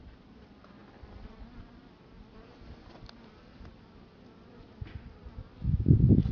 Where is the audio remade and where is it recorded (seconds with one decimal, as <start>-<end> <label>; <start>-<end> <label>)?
0.0-4.6 recorded; 4.6-5.3 remade; 5.3-6.3 recorded